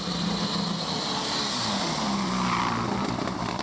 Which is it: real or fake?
real